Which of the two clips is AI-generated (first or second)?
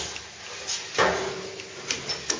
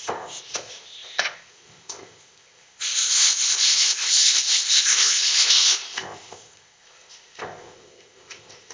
second